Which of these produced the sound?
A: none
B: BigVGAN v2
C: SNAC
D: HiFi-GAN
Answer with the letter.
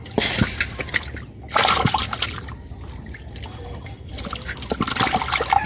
A